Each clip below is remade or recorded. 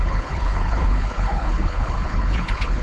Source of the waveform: remade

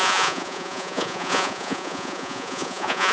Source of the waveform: remade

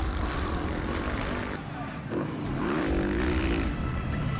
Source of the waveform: recorded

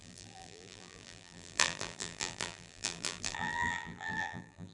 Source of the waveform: remade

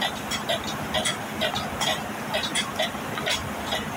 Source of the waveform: recorded